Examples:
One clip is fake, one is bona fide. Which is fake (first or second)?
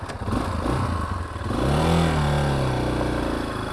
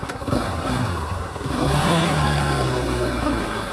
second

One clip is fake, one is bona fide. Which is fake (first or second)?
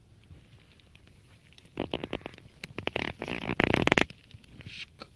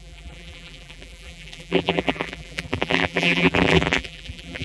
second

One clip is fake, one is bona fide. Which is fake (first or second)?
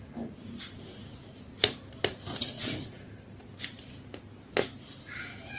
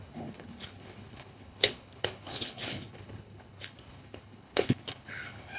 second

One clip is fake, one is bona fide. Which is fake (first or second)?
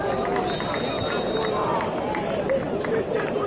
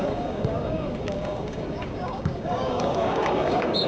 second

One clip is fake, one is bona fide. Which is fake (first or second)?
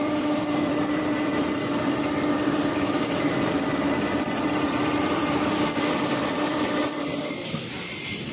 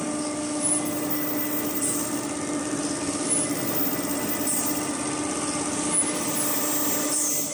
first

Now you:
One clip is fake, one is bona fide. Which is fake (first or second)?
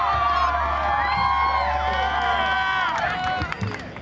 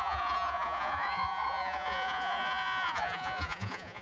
second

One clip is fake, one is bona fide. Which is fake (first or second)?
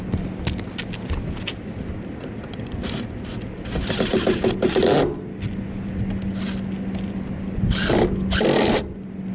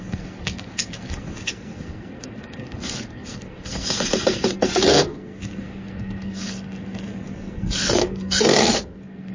second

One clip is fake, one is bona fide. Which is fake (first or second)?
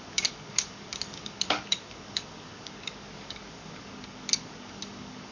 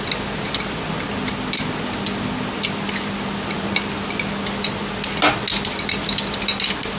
first